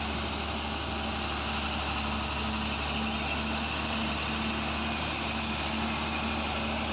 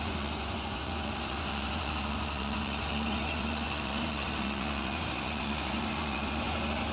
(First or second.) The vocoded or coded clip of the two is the second